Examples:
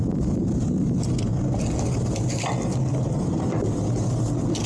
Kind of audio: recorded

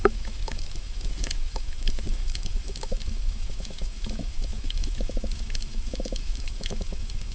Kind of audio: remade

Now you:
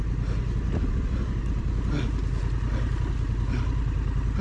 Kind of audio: recorded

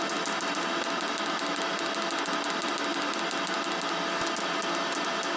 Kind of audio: recorded